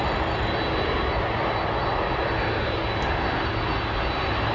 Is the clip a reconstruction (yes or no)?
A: no